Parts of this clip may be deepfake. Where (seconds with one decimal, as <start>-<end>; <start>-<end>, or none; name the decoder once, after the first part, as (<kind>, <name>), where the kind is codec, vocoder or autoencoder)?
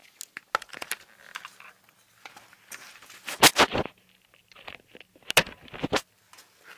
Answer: none